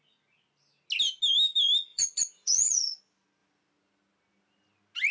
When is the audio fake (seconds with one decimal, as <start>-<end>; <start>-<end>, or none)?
1.9-3.0